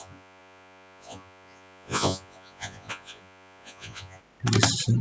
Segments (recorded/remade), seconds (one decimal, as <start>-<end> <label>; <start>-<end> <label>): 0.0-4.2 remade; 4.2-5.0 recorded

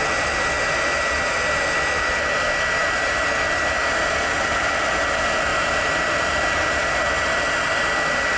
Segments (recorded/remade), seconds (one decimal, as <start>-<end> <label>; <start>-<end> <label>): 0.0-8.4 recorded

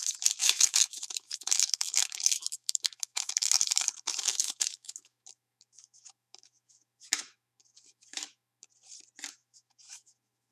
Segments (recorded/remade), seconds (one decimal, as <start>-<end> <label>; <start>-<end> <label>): 0.0-8.7 remade; 8.7-9.3 recorded; 9.3-10.5 remade

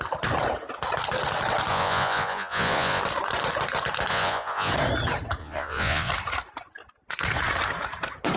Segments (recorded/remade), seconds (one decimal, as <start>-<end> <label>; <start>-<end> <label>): 0.0-1.7 recorded; 1.7-3.0 remade; 3.0-4.1 recorded; 4.1-4.7 remade; 4.7-5.4 recorded; 5.4-6.1 remade; 6.1-8.4 recorded

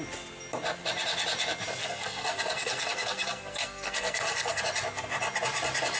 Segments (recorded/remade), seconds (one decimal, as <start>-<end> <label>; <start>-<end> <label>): 0.0-1.8 recorded; 1.8-4.6 remade; 4.6-6.0 recorded

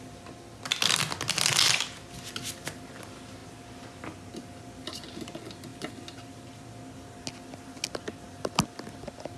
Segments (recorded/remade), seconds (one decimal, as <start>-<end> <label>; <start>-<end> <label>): 0.0-9.4 recorded

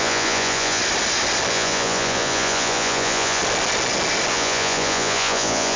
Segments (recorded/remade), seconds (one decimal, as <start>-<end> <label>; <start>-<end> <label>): 0.0-0.8 remade; 0.8-1.5 recorded; 1.5-3.4 remade; 3.4-4.3 recorded; 4.3-5.8 remade